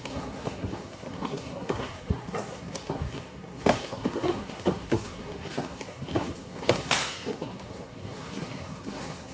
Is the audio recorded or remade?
remade